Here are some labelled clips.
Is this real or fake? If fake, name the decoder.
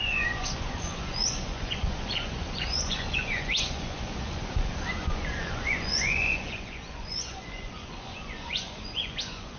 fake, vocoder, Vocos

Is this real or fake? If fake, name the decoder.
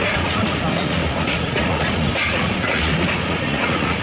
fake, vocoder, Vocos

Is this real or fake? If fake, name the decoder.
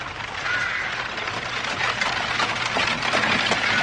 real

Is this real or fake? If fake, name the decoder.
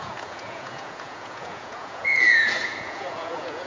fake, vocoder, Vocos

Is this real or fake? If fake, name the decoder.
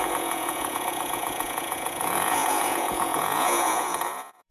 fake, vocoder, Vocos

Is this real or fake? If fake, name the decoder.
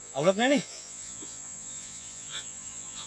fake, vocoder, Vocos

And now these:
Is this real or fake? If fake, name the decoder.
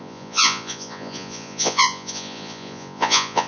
fake, vocoder, Vocos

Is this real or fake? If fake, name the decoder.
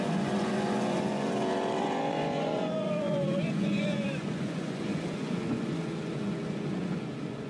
fake, vocoder, Vocos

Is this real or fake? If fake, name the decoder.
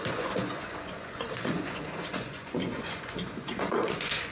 fake, vocoder, Vocos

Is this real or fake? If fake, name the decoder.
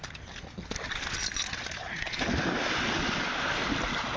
real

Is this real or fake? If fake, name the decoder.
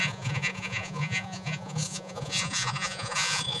fake, vocoder, Vocos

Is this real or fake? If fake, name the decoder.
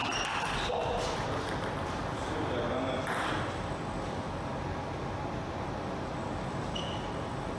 real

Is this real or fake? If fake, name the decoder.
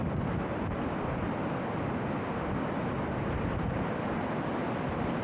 real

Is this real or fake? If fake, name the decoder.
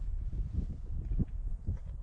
real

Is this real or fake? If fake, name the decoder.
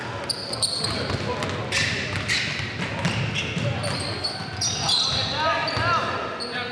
real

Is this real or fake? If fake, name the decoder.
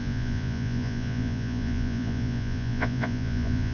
fake, vocoder, Vocos